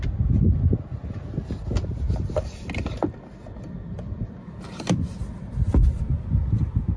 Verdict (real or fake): real